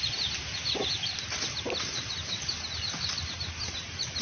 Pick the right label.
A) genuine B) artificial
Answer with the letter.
A